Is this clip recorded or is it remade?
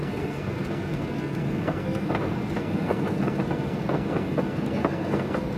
remade